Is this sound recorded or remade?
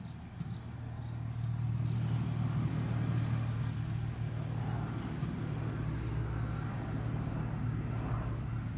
recorded